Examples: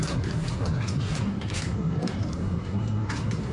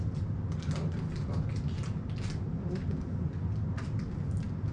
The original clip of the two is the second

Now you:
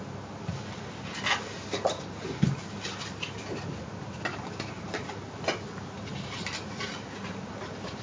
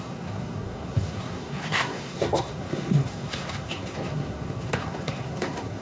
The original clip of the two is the first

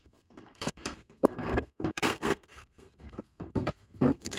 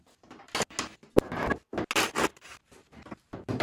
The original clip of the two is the second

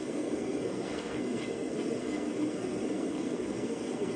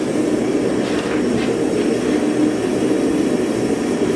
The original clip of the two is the second